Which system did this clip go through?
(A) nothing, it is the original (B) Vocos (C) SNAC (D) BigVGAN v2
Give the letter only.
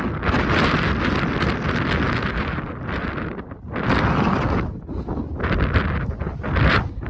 A